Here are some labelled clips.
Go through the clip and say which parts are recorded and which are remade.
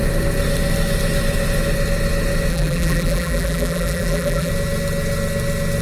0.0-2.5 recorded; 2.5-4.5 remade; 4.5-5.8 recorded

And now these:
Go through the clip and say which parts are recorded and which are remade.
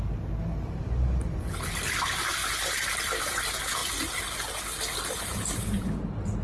0.0-2.4 recorded; 2.4-3.4 remade; 3.4-6.4 recorded